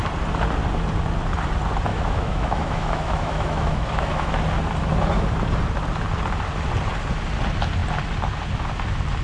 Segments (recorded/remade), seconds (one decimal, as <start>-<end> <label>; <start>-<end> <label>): 0.0-1.9 recorded; 1.9-4.4 remade; 4.4-9.2 recorded